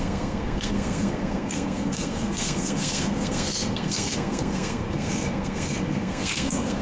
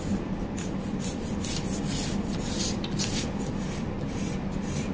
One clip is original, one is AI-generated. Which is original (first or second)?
second